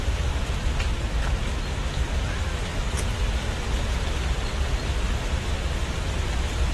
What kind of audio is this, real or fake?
real